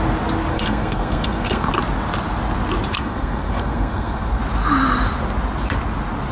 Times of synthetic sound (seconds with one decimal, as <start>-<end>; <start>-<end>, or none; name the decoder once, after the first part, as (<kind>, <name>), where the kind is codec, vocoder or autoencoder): 0.5-1.7 (codec, SNAC); 2.9-4.4